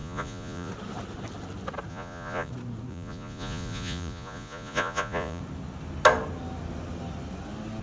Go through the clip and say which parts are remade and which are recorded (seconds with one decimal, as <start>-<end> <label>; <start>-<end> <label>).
0.0-0.7 remade; 0.7-1.9 recorded; 1.9-2.5 remade; 2.5-2.9 recorded; 2.9-5.4 remade; 5.4-7.8 recorded

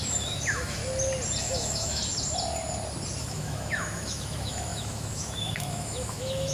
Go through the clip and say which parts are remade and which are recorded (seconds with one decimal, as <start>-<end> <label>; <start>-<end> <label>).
0.0-0.8 remade; 0.8-1.4 recorded; 1.4-2.0 remade; 2.0-3.2 recorded; 3.2-6.5 remade

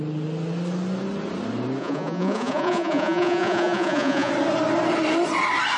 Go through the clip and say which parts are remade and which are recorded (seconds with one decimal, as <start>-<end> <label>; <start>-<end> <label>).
0.0-1.8 recorded; 1.8-4.3 remade; 4.3-5.8 recorded

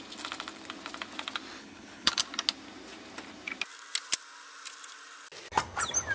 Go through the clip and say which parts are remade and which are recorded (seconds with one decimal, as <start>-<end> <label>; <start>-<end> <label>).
0.0-1.6 recorded; 1.6-2.2 remade; 2.2-6.1 recorded

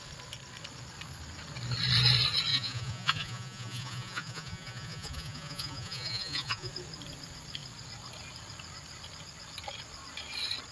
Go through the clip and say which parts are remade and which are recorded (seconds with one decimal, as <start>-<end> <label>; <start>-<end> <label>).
0.0-2.5 recorded; 2.5-6.7 remade; 6.7-10.7 recorded